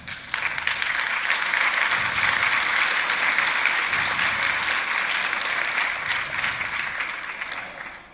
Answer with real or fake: real